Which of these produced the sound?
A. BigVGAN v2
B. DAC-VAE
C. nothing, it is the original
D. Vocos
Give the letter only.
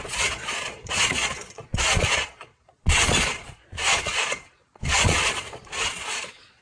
D